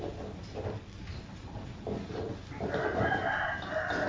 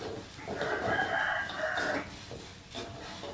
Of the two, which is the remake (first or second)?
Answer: second